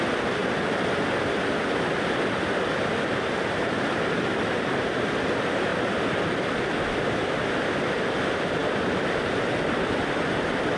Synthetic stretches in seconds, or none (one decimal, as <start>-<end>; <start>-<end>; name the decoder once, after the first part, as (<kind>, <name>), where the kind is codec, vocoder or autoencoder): none